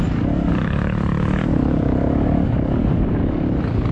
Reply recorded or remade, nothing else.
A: remade